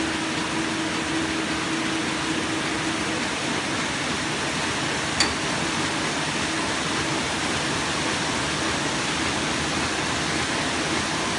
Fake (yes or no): no